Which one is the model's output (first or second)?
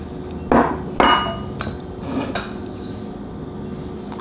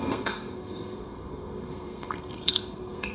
second